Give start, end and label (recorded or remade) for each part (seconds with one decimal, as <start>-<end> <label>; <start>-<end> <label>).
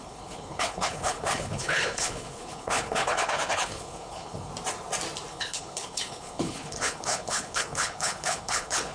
0.0-4.5 remade; 4.5-5.3 recorded; 5.3-8.9 remade